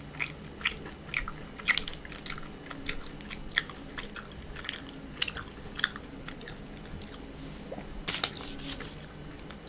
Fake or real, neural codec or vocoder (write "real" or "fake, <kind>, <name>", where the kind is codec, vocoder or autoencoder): real